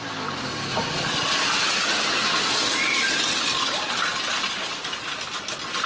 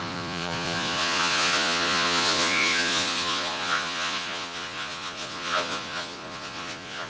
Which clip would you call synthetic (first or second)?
second